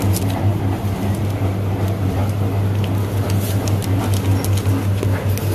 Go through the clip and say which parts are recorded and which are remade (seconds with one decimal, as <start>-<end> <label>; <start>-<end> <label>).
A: 0.0-5.5 recorded